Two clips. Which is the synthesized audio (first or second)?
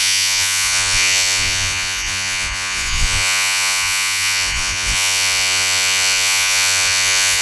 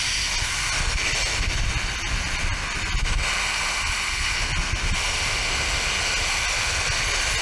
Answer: first